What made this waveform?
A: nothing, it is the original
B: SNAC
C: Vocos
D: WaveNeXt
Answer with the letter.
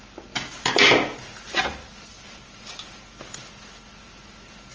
A